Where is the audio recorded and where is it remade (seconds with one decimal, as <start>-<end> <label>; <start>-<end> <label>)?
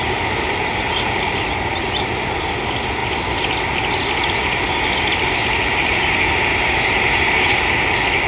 0.0-8.3 recorded